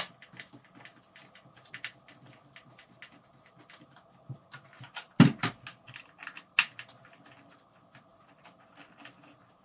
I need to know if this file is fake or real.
real